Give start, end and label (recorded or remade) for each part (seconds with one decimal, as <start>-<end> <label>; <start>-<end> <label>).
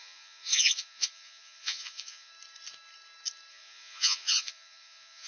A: 0.0-2.3 remade; 2.3-3.5 recorded; 3.5-5.3 remade